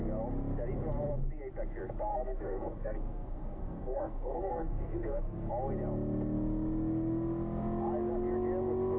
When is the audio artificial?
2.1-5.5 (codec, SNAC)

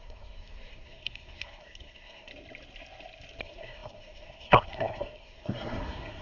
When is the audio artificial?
0.0-2.3 (codec, SNAC); 3.4-6.2